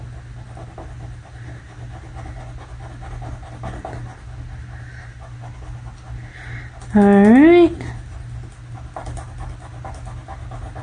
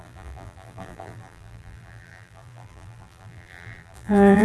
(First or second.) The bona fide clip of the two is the first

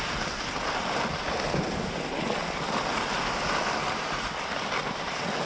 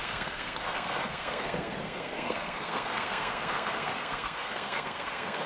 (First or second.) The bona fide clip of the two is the first